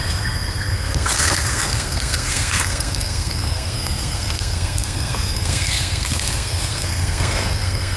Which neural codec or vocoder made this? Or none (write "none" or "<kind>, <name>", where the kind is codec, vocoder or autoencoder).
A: codec, SNAC